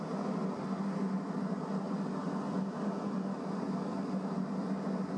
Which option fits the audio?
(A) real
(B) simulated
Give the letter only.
A